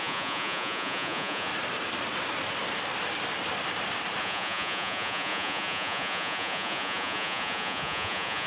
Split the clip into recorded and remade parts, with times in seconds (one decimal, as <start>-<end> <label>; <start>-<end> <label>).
0.0-1.5 remade; 1.5-4.2 recorded; 4.2-8.5 remade